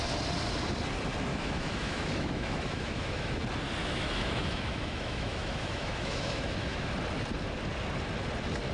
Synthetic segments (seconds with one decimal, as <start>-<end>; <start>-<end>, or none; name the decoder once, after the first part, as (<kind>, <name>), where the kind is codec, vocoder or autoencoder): 1.3-3.4 (autoencoder, DAC-VAE); 3.8-6.9